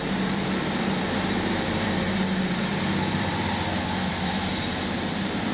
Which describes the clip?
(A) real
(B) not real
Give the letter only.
B